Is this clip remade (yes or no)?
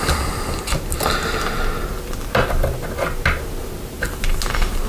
no